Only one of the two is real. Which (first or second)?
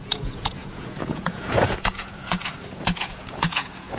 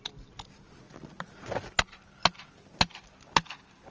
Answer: second